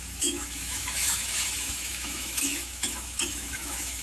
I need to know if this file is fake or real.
fake